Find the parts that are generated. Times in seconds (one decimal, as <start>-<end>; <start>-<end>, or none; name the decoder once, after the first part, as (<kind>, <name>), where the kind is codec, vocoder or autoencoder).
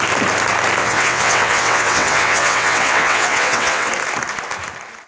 0.8-3.9 (vocoder, WaveNeXt)